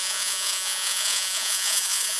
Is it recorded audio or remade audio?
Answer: remade